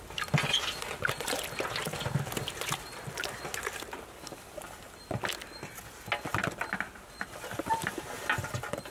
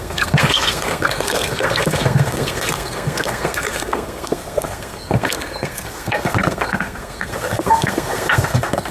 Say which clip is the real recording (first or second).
first